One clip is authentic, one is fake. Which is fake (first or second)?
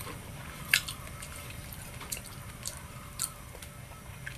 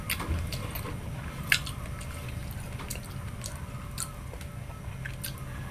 first